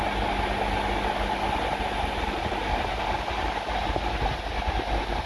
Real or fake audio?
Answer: real